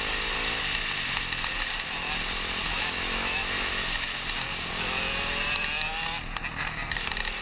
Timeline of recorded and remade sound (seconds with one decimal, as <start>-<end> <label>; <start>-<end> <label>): 0.0-2.6 recorded; 2.6-4.2 remade; 4.2-7.4 recorded